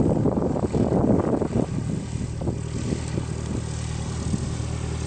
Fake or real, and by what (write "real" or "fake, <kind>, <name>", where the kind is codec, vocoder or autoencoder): real